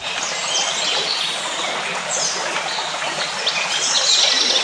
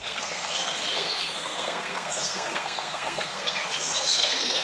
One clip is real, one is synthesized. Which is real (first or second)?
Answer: first